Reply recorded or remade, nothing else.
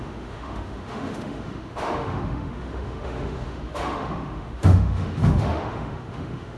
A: remade